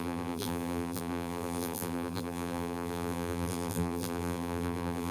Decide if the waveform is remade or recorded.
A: remade